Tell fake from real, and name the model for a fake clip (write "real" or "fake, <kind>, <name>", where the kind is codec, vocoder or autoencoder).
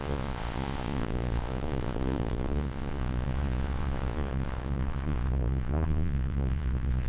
fake, vocoder, Vocos